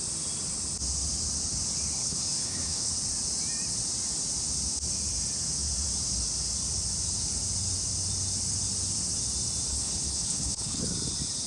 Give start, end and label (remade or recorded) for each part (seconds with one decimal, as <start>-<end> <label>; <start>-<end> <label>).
0.0-2.0 recorded; 2.0-2.9 remade; 2.9-9.7 recorded; 9.7-10.9 remade; 10.9-11.5 recorded